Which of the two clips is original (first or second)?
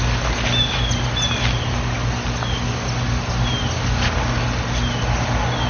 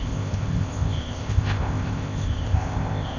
first